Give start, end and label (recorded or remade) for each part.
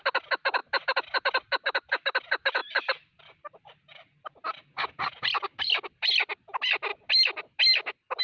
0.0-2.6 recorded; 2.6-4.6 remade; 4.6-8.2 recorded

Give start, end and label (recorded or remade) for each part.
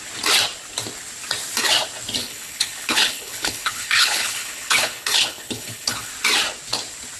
0.0-2.2 recorded; 2.2-6.1 remade; 6.1-7.2 recorded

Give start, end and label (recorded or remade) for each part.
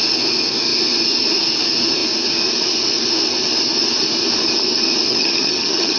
0.0-5.1 recorded; 5.1-6.0 remade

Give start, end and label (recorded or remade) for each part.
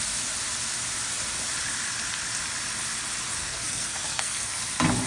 0.0-3.4 recorded; 3.4-4.6 remade; 4.6-5.1 recorded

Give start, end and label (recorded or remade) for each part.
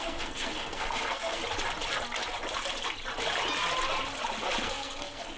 0.0-1.4 remade; 1.4-4.6 recorded; 4.6-5.4 remade